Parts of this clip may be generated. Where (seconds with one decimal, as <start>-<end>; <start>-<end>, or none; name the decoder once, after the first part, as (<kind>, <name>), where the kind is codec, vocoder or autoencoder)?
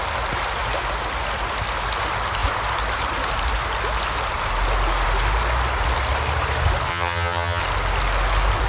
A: 6.9-7.6 (vocoder, HiFi-GAN)